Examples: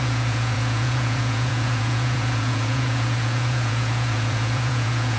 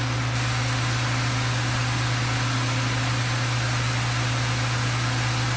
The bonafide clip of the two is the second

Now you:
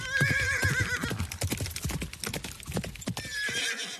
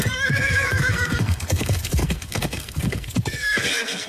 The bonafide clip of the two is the first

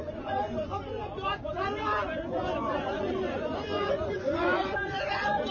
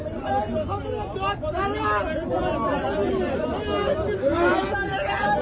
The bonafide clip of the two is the second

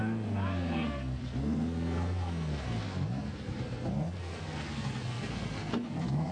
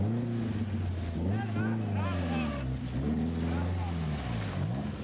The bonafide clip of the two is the second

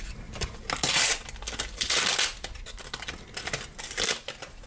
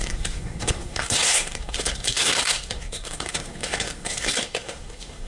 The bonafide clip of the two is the first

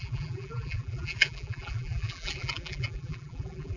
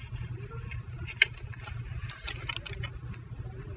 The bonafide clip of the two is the second